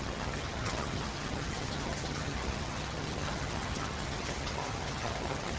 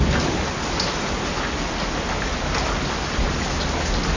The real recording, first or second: second